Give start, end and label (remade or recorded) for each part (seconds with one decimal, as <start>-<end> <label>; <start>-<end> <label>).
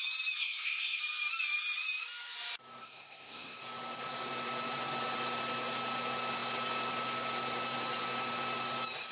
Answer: 0.0-0.4 recorded; 0.4-1.0 remade; 1.0-2.8 recorded; 2.8-3.6 remade; 3.6-9.1 recorded